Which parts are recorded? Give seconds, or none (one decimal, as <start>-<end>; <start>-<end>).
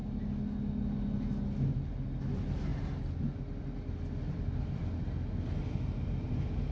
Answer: 0.0-6.7